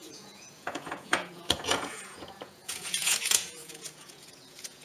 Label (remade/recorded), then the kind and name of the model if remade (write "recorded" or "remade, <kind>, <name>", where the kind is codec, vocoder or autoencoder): remade, vocoder, Vocos